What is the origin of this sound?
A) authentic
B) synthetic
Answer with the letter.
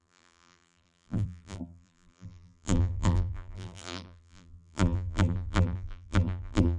B